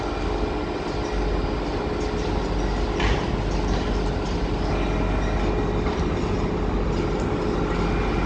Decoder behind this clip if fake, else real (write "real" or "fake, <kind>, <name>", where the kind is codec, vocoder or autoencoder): real